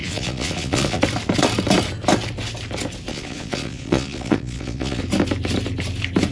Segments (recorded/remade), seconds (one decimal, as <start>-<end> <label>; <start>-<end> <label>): 0.0-1.0 remade; 1.0-3.1 recorded; 3.1-5.0 remade; 5.0-6.3 recorded